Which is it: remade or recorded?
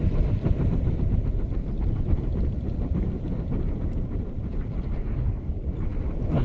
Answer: recorded